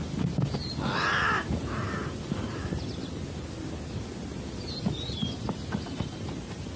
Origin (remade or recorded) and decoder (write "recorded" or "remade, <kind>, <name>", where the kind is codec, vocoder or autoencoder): recorded